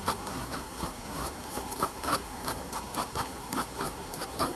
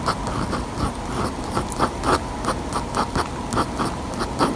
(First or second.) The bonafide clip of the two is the second